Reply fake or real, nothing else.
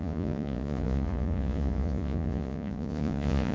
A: fake